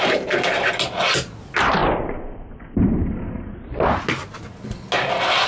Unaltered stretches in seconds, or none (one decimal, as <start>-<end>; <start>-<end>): 0.0-5.5